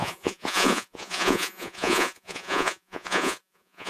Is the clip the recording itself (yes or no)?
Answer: no